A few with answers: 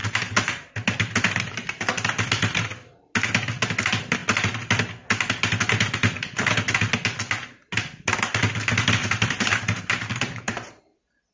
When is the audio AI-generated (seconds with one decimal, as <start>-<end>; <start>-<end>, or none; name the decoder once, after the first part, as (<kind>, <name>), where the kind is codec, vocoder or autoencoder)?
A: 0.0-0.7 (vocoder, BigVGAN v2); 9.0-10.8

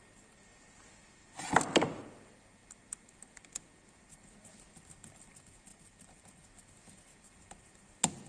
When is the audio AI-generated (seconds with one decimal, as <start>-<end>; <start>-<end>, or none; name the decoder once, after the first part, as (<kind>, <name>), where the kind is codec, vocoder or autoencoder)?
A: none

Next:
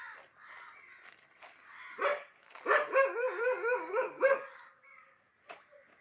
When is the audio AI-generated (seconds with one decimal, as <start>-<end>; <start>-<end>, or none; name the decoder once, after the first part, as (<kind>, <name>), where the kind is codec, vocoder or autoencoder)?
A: 2.1-2.6 (codec, DAC); 3.4-5.3